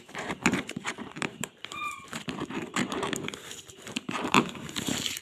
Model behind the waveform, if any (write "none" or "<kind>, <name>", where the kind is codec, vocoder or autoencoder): vocoder, BigVGAN v2